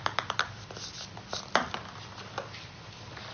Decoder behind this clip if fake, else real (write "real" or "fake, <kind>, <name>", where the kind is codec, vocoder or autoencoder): real